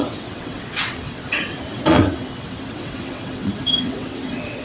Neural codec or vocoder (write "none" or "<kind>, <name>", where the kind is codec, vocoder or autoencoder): vocoder, WaveNeXt